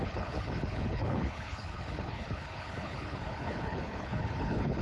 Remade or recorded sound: remade